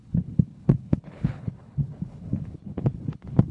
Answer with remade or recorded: remade